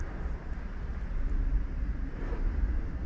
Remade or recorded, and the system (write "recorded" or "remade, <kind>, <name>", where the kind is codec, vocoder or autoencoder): remade, vocoder, BigVGAN v2